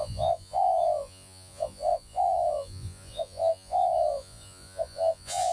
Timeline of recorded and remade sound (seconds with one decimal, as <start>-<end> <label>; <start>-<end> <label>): 0.0-5.5 remade